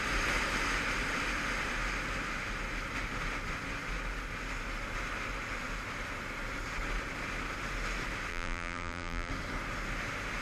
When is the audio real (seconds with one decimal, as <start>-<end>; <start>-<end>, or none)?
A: 0.0-8.3; 9.3-10.4